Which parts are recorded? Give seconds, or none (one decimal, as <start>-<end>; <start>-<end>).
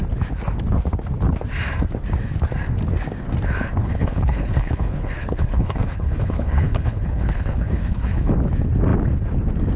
0.0-3.8; 8.3-9.8